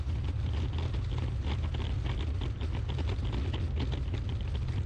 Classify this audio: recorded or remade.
recorded